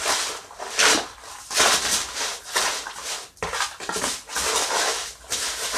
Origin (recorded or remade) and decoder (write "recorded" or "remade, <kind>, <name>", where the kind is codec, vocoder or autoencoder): recorded